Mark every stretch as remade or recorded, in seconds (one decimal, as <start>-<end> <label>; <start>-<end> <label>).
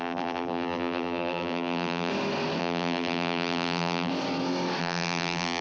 0.0-2.1 remade; 2.1-2.6 recorded; 2.6-4.1 remade; 4.1-4.8 recorded; 4.8-5.6 remade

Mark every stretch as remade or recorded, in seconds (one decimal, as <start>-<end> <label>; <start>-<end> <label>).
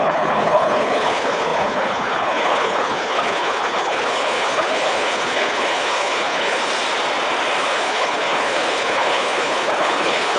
0.0-6.7 remade; 6.7-7.6 recorded; 7.6-10.4 remade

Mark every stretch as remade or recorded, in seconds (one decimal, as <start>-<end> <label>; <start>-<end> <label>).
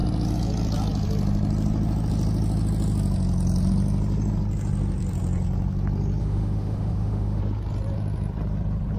0.0-6.2 recorded; 6.2-7.4 remade; 7.4-9.0 recorded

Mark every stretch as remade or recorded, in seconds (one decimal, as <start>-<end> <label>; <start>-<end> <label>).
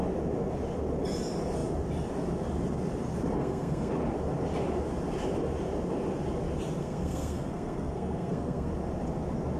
0.0-3.4 recorded; 3.4-3.9 remade; 3.9-6.8 recorded; 6.8-8.7 remade; 8.7-9.6 recorded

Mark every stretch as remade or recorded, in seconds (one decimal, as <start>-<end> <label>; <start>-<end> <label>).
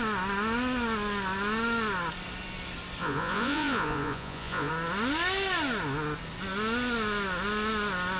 0.0-3.0 recorded; 3.0-4.7 remade; 4.7-8.2 recorded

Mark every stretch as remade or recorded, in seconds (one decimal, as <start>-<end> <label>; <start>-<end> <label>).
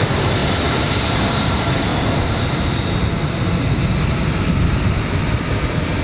0.0-1.9 remade; 1.9-4.6 recorded; 4.6-6.0 remade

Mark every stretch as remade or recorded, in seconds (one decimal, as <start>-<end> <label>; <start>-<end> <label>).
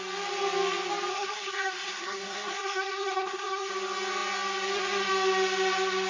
0.0-1.1 recorded; 1.1-3.7 remade; 3.7-6.1 recorded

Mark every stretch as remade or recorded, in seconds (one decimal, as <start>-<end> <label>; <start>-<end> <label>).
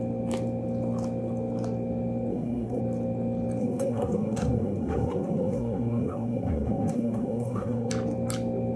0.0-2.3 recorded; 2.3-2.8 remade; 2.8-3.6 recorded; 3.6-7.9 remade; 7.9-8.8 recorded